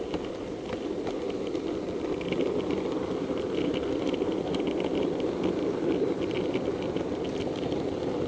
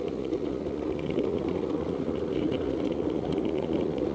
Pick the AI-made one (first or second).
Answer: second